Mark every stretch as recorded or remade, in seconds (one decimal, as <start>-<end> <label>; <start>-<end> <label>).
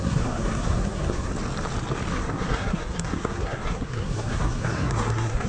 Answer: 0.0-1.3 remade; 1.3-2.1 recorded; 2.1-5.5 remade